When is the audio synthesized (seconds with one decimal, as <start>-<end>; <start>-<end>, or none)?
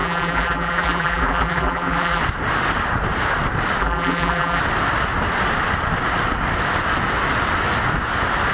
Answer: 0.0-2.2; 3.8-4.6